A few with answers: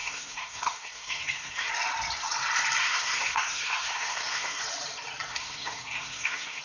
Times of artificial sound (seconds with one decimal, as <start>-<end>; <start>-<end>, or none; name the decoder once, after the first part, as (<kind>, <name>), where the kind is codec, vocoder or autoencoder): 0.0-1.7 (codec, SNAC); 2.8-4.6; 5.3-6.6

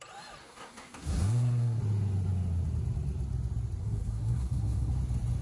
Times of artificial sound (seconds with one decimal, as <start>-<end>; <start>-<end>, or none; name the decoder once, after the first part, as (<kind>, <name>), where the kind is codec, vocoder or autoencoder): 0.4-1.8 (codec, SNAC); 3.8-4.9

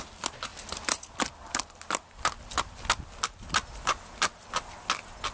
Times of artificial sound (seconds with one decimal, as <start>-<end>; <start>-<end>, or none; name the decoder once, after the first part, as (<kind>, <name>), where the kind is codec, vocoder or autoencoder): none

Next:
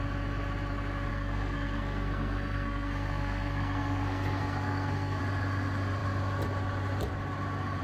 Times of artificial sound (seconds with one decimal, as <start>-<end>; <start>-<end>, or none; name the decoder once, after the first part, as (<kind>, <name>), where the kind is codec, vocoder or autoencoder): 1.1-5.2 (codec, SNAC)

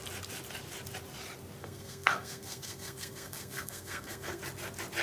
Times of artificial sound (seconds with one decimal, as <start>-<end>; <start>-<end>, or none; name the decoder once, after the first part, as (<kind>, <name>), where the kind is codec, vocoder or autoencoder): 1.6-4.4 (codec, SNAC)

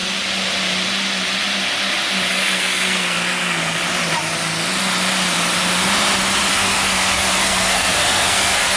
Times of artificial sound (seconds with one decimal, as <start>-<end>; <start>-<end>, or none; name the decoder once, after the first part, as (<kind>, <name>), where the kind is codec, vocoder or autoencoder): 2.3-3.8 (codec, SNAC); 6.5-8.8

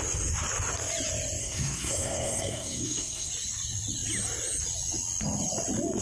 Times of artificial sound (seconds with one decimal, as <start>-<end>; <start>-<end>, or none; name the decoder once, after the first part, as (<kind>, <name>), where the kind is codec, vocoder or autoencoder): 1.4-3.3 (codec, SNAC)

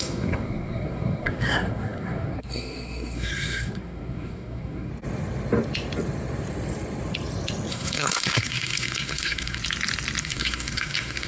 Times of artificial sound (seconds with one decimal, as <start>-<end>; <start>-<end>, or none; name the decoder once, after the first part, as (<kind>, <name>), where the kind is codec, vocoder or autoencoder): 0.0-4.9 (codec, SNAC); 7.7-9.6; 10.2-11.3